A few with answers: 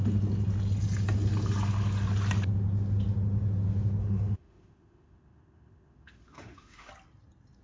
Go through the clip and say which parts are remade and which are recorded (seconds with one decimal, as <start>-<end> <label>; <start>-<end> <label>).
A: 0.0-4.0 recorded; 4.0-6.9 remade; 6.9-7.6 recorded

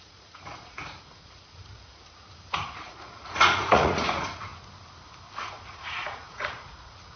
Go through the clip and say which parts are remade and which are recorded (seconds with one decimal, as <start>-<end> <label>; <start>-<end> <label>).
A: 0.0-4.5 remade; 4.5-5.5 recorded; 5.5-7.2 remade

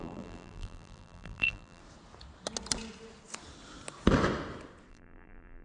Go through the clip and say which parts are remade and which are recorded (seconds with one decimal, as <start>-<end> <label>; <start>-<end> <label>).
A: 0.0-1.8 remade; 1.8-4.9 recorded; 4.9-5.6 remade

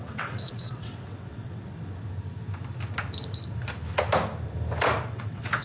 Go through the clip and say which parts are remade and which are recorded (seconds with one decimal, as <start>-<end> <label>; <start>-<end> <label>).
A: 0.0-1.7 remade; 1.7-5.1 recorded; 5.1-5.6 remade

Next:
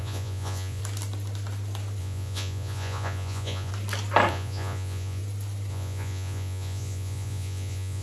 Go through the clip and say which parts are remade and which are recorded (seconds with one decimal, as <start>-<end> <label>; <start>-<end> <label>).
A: 0.0-0.8 remade; 0.8-2.0 recorded; 2.0-3.7 remade; 3.7-4.3 recorded; 4.3-5.2 remade; 5.2-5.7 recorded; 5.7-8.0 remade

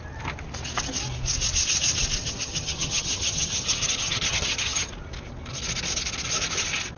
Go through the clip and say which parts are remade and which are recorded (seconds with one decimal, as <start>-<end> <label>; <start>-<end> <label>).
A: 0.0-2.2 recorded; 2.2-4.9 remade; 4.9-7.0 recorded

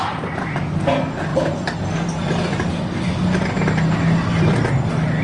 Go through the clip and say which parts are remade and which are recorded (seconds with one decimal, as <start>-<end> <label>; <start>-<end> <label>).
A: 0.0-1.3 recorded; 1.3-2.2 remade; 2.2-5.2 recorded

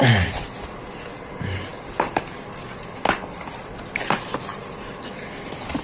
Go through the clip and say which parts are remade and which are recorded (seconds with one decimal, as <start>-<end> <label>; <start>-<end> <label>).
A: 0.0-5.8 recorded